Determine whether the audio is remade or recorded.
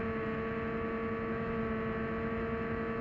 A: recorded